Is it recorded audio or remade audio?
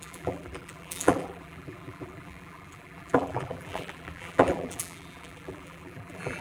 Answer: remade